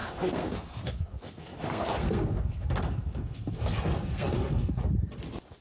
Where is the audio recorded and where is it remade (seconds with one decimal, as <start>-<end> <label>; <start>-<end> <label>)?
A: 0.0-4.8 remade; 4.8-5.6 recorded